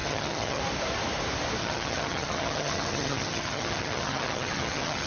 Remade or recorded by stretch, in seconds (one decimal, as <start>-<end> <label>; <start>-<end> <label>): 0.0-0.6 remade; 0.6-1.6 recorded; 1.6-5.1 remade